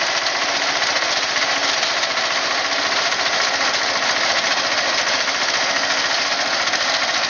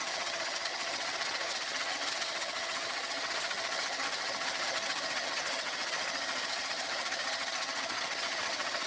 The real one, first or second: first